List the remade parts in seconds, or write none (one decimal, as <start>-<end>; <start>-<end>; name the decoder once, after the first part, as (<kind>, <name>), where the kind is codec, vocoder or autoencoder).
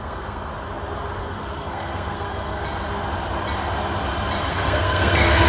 0.0-0.5 (codec, SNAC); 1.2-2.6; 4.5-5.5